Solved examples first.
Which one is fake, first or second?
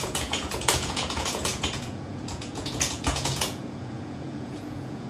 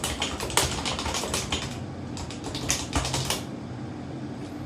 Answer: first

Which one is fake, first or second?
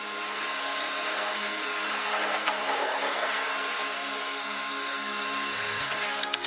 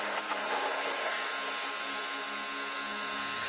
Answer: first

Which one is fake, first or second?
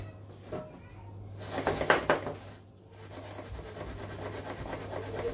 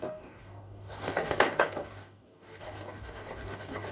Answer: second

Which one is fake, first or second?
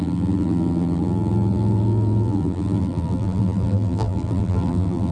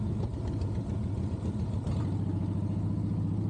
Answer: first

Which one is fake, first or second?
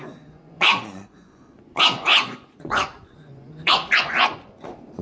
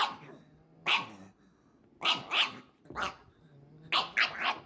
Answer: first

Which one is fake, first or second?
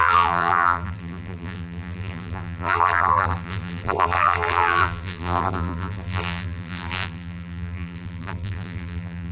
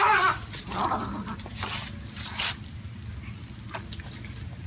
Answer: first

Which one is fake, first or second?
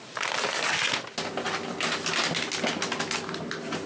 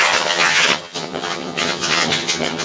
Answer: second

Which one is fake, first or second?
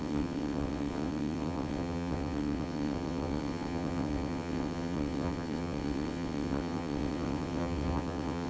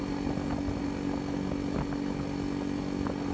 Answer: first